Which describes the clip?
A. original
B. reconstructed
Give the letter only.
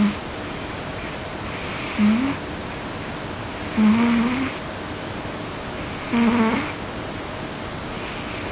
A